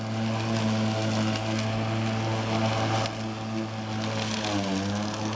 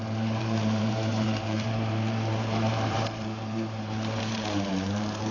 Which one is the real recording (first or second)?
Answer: first